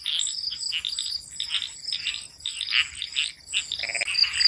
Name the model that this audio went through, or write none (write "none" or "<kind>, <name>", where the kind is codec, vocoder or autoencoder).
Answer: none